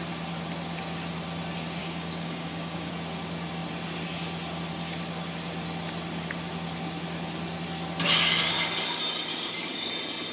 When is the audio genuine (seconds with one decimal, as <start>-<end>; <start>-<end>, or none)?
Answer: 0.0-1.8; 2.9-9.3; 9.9-10.3